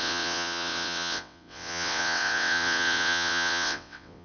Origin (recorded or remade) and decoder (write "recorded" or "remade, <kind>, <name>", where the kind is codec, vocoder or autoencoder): remade, vocoder, WaveNeXt